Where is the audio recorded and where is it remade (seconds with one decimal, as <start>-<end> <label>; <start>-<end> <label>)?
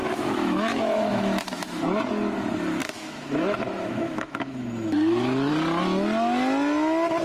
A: 0.0-1.8 remade; 1.8-2.8 recorded; 2.8-5.5 remade; 5.5-7.2 recorded